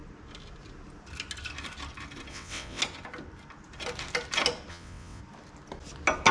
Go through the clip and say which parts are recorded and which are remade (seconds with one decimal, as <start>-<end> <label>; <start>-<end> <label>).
0.0-2.3 recorded; 2.3-2.8 remade; 2.8-4.7 recorded; 4.7-5.2 remade; 5.2-6.3 recorded